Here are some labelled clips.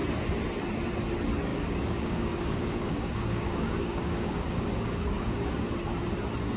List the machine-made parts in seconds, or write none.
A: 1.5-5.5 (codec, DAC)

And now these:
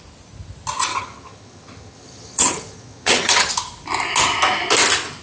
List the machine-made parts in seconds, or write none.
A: 0.9-3.5 (vocoder, HiFi-GAN)

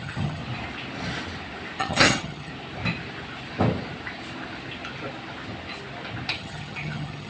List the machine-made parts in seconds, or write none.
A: 0.0-0.4 (vocoder, HiFi-GAN); 1.8-2.5; 6.3-7.3

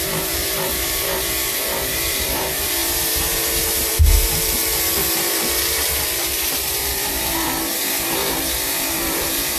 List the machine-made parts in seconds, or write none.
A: 0.0-9.6 (vocoder, BigVGAN v2)

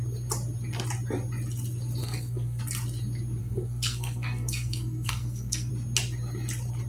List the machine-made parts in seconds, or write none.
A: 2.0-2.6 (codec, SNAC); 3.4-5.7

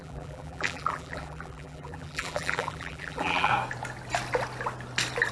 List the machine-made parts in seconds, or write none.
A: 0.0-3.5 (vocoder, BigVGAN v2)

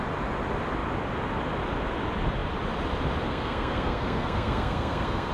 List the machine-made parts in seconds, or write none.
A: 3.3-5.3 (codec, SNAC)

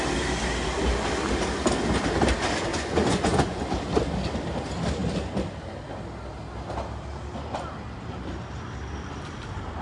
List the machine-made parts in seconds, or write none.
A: 2.7-3.6 (vocoder, Vocos)